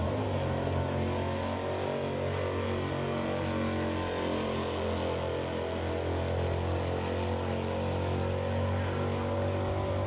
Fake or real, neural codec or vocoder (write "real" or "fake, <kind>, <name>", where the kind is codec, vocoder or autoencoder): real